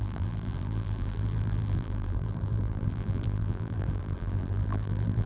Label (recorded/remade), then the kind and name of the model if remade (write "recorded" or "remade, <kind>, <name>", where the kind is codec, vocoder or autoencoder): remade, vocoder, BigVGAN v2